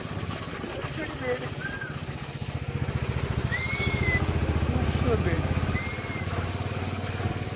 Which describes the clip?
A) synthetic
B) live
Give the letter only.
B